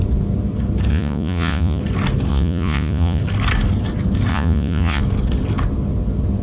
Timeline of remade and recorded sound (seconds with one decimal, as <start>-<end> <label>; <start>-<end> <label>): 0.0-0.9 recorded; 0.9-1.8 remade; 1.8-2.3 recorded; 2.3-3.2 remade; 3.2-4.3 recorded; 4.3-5.0 remade; 5.0-6.4 recorded